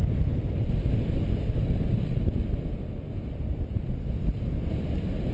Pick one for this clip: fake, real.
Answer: real